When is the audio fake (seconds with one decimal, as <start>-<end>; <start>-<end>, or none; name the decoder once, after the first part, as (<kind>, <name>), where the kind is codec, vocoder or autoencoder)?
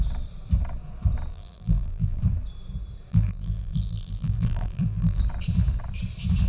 1.3-2.2 (vocoder, BigVGAN v2); 3.1-5.2